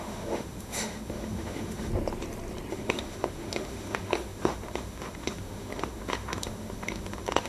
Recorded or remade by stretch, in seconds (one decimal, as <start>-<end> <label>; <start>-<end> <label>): 0.0-1.9 remade; 1.9-2.7 recorded; 2.7-7.5 remade